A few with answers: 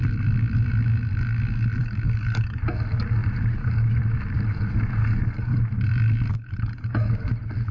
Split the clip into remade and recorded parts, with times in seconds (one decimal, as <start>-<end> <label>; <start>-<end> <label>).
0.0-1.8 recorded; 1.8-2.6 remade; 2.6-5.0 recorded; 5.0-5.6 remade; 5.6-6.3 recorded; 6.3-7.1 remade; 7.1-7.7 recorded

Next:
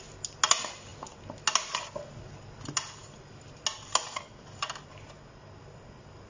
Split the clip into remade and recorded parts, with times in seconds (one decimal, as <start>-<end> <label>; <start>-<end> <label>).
0.0-6.3 recorded

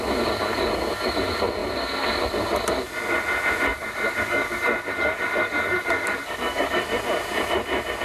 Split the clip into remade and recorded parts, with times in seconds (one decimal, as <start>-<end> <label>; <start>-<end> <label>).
0.0-3.7 recorded; 3.7-6.8 remade; 6.8-8.0 recorded